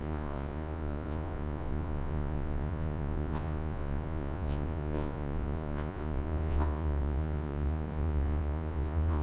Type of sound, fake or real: fake